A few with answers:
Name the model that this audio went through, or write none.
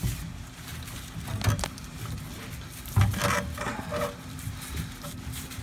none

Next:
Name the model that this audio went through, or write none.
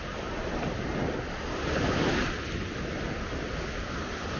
none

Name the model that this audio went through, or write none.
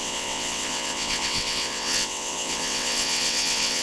vocoder, WaveNeXt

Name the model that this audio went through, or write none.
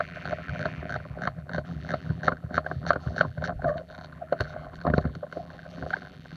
vocoder, BigVGAN v2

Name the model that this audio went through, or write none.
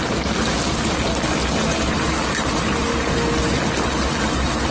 none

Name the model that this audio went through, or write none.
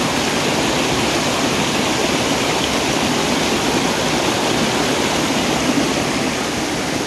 none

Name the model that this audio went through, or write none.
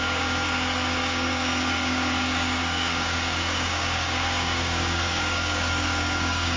codec, DAC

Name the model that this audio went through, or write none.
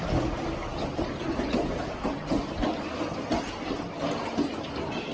none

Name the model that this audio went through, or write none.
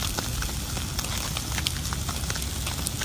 none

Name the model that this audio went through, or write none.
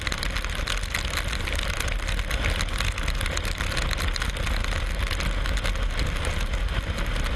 none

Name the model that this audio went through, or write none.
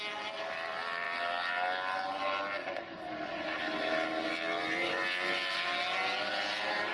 none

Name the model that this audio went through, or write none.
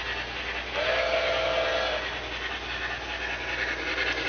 none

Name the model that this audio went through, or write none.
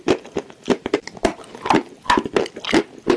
none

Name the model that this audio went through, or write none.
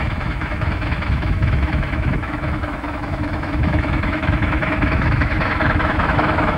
autoencoder, DAC-VAE